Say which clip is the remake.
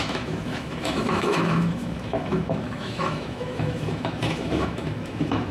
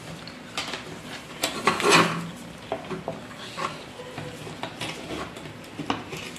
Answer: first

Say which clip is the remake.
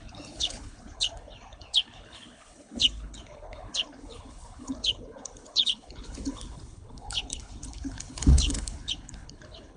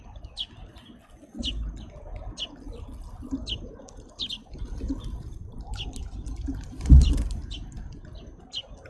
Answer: first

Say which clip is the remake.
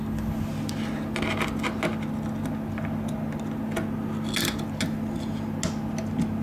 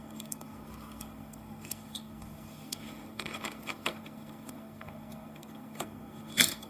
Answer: second